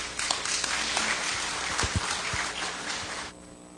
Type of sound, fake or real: real